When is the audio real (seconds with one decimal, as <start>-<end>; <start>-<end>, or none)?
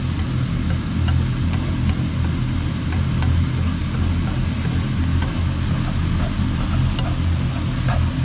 0.0-8.2